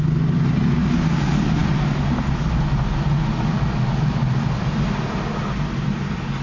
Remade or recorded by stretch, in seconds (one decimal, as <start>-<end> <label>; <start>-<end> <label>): 0.0-6.4 recorded